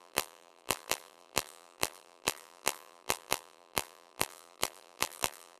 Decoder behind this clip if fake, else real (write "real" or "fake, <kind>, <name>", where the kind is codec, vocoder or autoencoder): fake, vocoder, BigVGAN v2